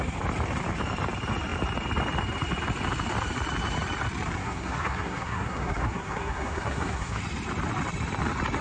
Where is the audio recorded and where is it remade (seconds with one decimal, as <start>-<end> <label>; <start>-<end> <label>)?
0.0-4.4 recorded; 4.4-7.2 remade; 7.2-8.6 recorded